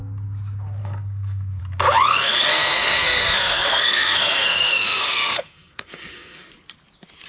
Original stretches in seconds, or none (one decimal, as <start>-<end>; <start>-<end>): 0.0-0.8; 1.6-2.1; 6.5-7.3